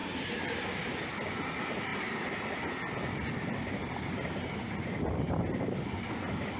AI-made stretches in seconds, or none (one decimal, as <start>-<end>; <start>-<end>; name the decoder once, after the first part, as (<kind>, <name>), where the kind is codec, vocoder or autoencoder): none